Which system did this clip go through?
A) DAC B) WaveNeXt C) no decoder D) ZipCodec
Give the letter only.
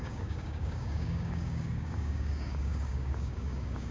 A